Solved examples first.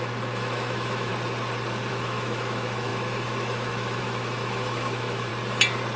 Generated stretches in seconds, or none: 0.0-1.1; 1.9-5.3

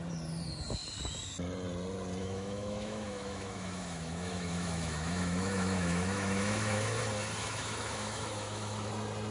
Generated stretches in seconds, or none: 2.2-7.0; 7.4-8.9

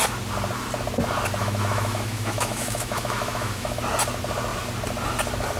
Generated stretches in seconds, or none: 1.4-3.8

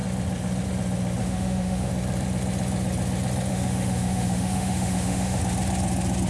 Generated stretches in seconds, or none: 1.2-1.9; 3.5-5.4